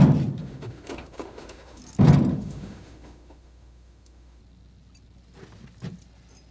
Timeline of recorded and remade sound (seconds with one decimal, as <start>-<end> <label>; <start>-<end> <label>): 0.0-0.4 recorded; 0.4-1.8 remade; 1.8-2.3 recorded; 2.3-4.4 remade; 4.4-6.5 recorded